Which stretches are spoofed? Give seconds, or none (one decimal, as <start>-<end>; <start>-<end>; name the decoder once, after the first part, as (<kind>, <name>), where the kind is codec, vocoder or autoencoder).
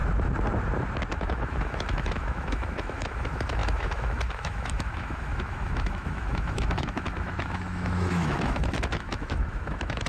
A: 1.1-10.1 (autoencoder, DAC-VAE)